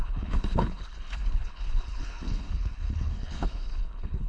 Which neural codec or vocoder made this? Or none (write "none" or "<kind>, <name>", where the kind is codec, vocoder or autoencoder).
codec, HILCodec